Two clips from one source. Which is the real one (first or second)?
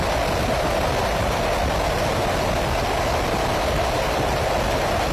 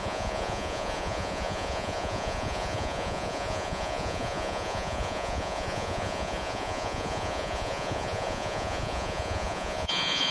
first